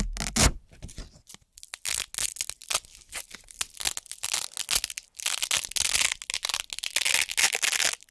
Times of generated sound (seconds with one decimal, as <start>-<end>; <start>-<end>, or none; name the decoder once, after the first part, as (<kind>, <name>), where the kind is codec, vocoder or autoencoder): none